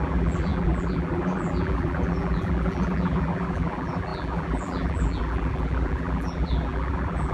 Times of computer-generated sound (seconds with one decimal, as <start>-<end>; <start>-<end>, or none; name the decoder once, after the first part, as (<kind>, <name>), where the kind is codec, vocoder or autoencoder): 0.0-7.3 (vocoder, BigVGAN v2)